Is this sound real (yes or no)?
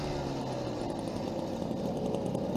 yes